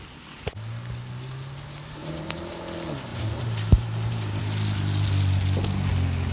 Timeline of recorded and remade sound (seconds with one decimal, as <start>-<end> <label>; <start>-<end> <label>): 0.0-2.0 recorded; 2.0-2.5 remade; 2.5-3.1 recorded; 3.1-4.4 remade; 4.4-6.3 recorded